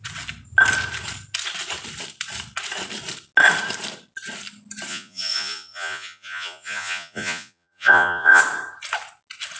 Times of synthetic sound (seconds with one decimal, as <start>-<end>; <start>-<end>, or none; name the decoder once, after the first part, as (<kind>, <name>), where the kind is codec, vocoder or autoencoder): 4.9-8.4 (vocoder, Vocos)